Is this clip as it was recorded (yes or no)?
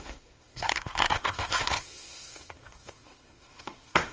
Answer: no